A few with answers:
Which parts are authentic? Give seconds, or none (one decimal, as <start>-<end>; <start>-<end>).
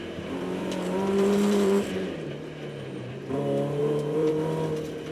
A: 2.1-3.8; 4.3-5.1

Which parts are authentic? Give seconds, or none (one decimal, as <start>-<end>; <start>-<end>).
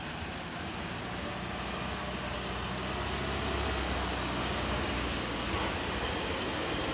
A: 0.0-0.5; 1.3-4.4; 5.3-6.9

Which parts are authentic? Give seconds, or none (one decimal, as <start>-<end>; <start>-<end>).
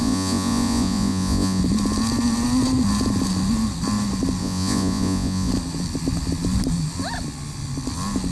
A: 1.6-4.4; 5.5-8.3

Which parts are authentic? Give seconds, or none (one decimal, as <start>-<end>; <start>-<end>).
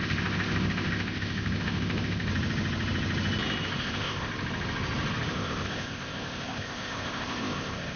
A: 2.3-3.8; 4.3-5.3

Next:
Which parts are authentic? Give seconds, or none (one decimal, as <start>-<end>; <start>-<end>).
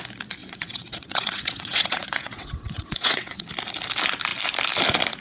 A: 0.0-0.4; 3.5-5.2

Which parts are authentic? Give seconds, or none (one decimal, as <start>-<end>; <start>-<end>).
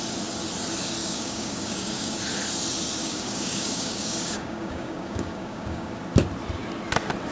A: 0.0-1.0; 2.2-3.0; 5.9-7.3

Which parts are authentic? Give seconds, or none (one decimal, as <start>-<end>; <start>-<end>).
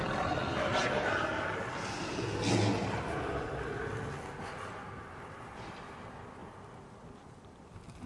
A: 0.0-8.1